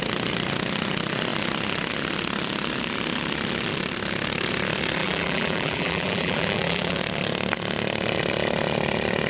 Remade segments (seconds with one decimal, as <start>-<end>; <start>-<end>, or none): 5.0-7.0